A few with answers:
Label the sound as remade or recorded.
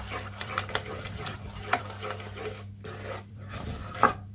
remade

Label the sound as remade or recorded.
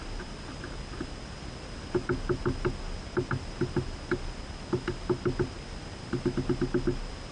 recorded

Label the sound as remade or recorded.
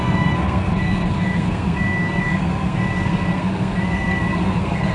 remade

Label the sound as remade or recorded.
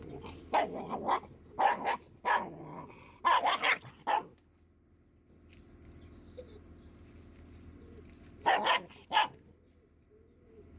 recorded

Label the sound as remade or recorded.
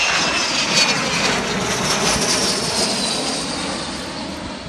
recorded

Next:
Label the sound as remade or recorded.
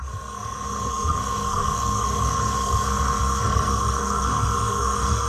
remade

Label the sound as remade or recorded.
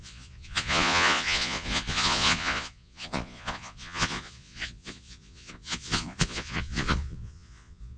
remade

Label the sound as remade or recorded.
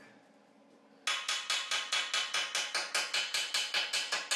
recorded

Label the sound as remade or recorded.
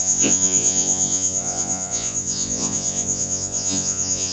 remade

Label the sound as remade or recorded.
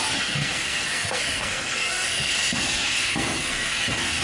remade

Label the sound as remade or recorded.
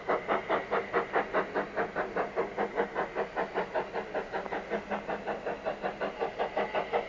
recorded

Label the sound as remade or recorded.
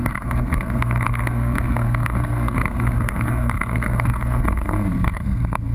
remade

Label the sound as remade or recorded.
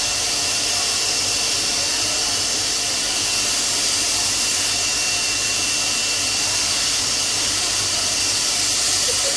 remade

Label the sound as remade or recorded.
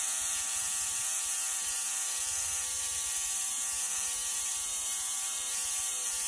remade